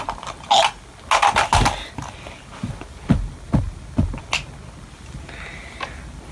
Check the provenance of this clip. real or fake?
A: real